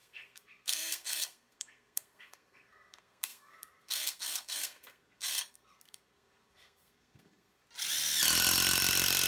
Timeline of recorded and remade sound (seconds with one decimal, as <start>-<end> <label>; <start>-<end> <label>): 0.0-7.6 remade; 7.6-9.3 recorded